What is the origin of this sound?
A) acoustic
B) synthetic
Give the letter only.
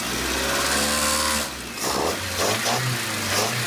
A